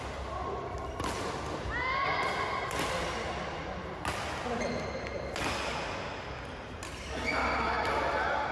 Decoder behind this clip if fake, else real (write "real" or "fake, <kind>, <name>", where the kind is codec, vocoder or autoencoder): real